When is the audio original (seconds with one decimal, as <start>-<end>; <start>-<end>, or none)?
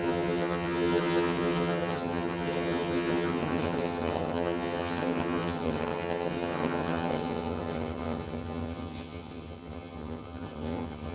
none